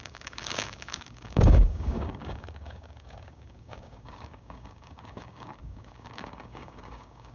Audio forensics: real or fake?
fake